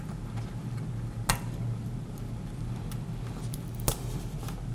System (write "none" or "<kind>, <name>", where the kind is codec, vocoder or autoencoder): none